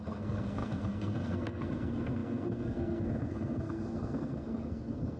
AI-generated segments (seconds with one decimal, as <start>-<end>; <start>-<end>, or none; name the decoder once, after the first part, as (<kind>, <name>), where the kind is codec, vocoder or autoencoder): 0.0-5.2 (codec, SNAC)